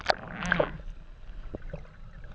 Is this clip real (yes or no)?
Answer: yes